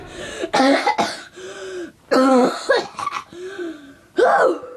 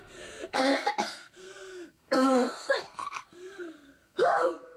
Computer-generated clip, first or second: second